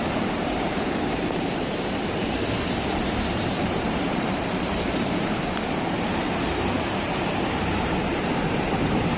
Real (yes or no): no